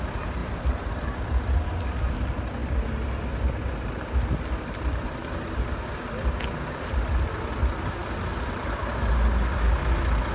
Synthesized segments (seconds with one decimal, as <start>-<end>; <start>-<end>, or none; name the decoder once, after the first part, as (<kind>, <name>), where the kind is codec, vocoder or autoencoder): 0.4-1.0 (vocoder, BigVGAN v2); 8.0-8.9